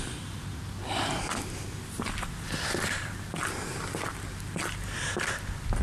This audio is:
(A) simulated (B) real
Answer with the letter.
B